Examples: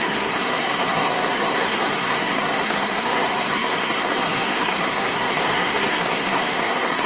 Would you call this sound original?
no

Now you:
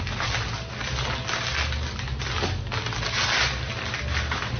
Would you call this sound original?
yes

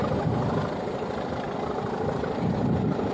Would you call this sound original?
yes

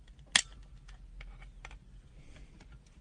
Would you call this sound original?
yes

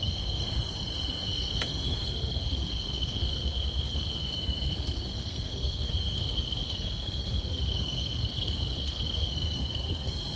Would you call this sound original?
no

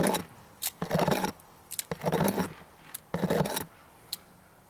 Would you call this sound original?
yes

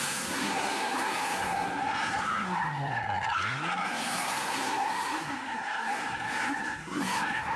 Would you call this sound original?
no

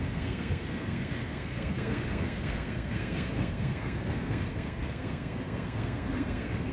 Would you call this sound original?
no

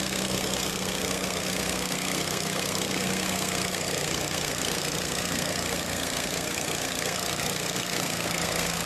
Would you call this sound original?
no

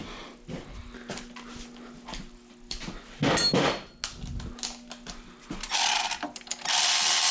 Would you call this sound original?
yes